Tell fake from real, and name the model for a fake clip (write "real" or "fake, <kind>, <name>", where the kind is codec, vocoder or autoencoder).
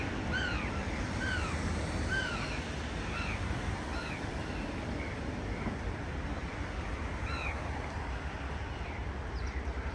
fake, vocoder, BigVGAN v2